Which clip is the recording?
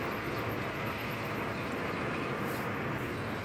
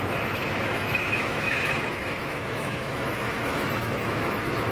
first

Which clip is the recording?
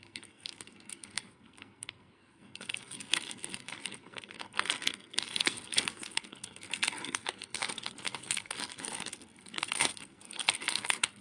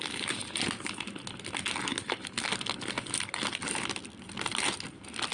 second